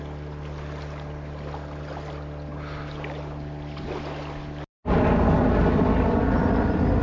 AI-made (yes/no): no